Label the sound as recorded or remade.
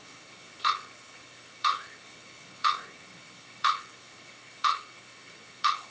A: remade